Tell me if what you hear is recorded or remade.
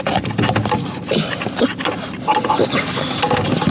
recorded